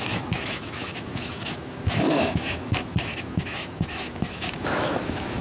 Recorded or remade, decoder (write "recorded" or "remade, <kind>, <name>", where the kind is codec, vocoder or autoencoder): remade, autoencoder, DAC-VAE